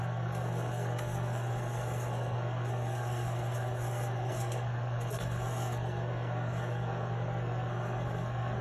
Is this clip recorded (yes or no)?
no